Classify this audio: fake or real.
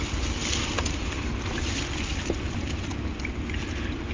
real